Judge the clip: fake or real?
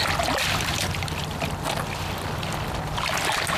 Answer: real